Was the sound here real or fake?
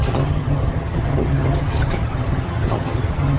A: fake